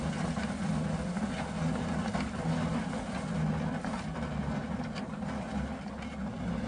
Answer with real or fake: real